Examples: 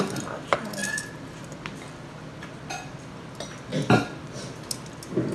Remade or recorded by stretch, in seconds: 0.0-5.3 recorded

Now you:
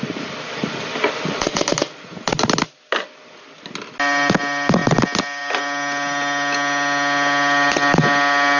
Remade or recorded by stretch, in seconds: 0.0-8.6 recorded

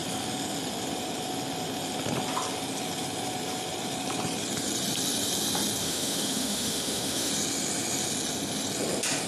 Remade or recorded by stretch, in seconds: 0.0-5.8 recorded; 5.8-7.3 remade; 7.3-9.3 recorded